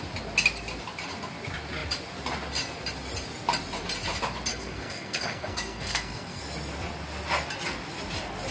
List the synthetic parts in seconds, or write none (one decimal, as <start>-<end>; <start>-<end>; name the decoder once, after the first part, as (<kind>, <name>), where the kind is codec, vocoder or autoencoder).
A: 4.5-6.4 (codec, SNAC)